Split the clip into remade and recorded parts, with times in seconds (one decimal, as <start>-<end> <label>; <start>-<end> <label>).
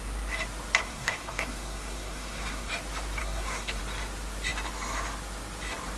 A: 0.0-0.8 recorded; 0.8-2.7 remade; 2.7-3.2 recorded; 3.2-3.8 remade; 3.8-6.0 recorded